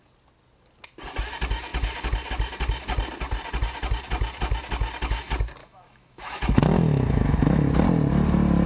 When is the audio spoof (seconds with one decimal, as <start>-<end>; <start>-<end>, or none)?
5.6-7.7